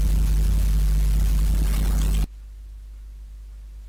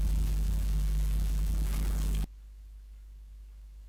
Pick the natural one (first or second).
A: first